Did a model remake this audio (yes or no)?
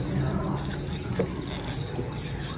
no